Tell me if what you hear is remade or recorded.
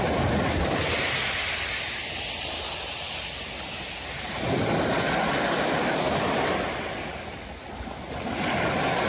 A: recorded